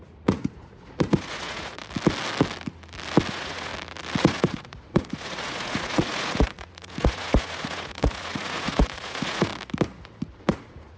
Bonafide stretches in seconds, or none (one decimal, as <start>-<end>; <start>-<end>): 1.8-3.3; 3.7-4.2; 9.5-10.4